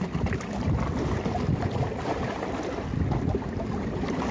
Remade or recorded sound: recorded